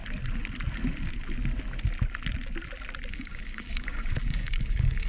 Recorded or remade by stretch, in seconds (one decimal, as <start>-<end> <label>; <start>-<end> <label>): 0.0-3.1 recorded; 3.1-5.1 remade

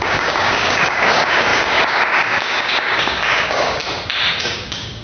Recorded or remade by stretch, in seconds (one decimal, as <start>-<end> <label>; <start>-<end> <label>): 0.0-3.8 remade; 3.8-4.3 recorded; 4.3-5.0 remade

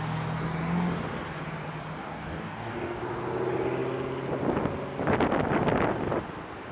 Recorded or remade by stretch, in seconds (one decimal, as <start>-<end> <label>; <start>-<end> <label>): 0.0-2.0 recorded; 2.0-3.0 remade; 3.0-6.7 recorded

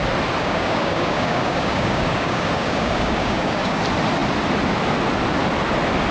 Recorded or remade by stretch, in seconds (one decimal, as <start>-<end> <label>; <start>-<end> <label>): 0.0-0.4 recorded; 0.4-3.8 remade; 3.8-6.1 recorded

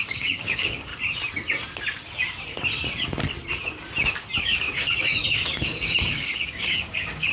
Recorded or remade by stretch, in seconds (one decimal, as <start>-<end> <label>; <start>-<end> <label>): 0.0-0.9 remade; 0.9-4.4 recorded; 4.4-7.3 remade

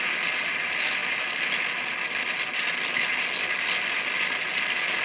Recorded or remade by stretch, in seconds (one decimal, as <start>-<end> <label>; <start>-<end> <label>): 0.0-5.0 recorded

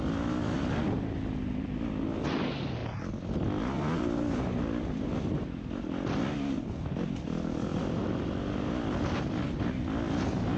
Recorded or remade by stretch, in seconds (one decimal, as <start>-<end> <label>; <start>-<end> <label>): 0.0-10.6 recorded